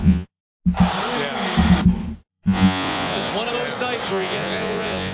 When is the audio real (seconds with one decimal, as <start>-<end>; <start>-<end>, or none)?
0.4-2.3; 3.3-4.1